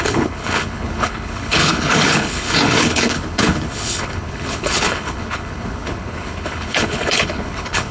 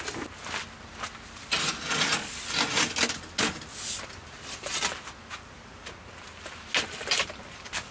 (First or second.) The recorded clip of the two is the second